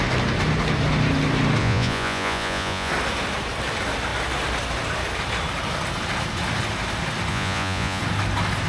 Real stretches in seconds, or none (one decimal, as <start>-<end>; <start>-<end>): 0.0-1.6; 2.9-7.3; 8.0-8.7